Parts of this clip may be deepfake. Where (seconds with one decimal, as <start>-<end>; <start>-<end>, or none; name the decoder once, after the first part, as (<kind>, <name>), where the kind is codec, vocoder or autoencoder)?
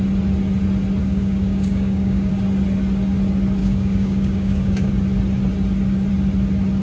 1.0-2.3 (codec, DAC); 3.6-4.9